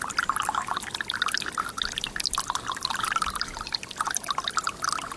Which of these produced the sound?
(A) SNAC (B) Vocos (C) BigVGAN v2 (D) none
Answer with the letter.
D